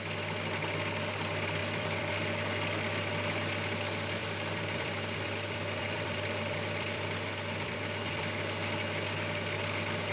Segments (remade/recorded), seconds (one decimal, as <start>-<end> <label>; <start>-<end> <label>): 0.0-1.6 recorded; 1.6-2.1 remade; 2.1-4.2 recorded; 4.2-8.2 remade; 8.2-10.1 recorded